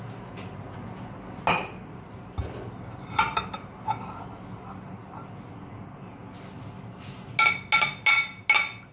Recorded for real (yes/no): yes